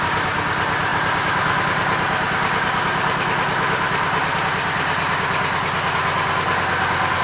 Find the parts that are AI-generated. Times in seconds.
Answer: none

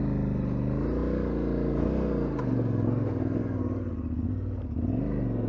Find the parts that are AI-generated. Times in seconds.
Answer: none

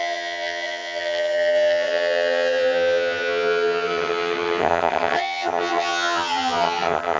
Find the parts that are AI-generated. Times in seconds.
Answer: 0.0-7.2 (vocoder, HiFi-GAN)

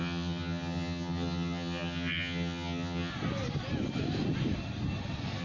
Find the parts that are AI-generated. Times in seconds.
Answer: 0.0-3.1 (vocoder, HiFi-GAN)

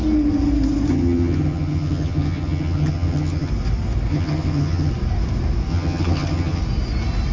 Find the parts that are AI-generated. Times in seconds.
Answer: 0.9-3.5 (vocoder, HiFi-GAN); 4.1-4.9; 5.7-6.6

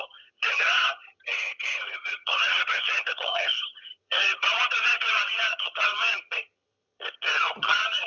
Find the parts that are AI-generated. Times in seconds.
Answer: 0.0-8.1 (vocoder, HiFi-GAN)

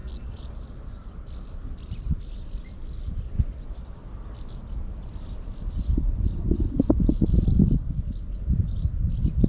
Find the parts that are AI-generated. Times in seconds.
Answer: none

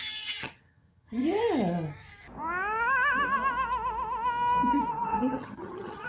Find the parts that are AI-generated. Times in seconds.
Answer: 0.0-1.2 (vocoder, HiFi-GAN); 4.9-6.1